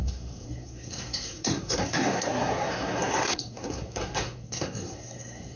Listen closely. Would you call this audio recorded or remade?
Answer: remade